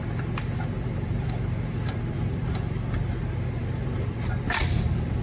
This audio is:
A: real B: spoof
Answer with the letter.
B